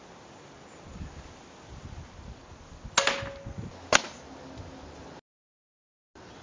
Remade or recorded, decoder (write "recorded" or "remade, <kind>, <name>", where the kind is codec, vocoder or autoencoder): recorded